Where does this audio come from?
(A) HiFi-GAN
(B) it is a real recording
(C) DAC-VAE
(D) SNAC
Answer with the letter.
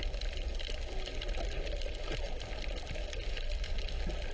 B